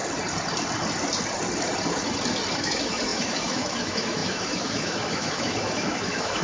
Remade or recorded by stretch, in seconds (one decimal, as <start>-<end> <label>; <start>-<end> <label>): 0.0-2.6 recorded; 2.6-6.4 remade